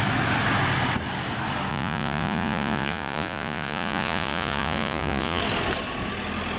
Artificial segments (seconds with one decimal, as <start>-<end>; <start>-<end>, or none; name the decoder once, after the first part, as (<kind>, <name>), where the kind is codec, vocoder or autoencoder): 1.7-5.4 (vocoder, Vocos)